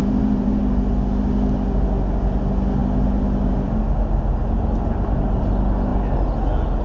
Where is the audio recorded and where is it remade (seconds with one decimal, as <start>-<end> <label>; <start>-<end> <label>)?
0.0-0.6 remade; 0.6-6.8 recorded